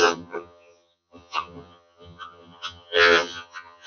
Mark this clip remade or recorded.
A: remade